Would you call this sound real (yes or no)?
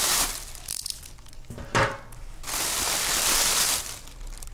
no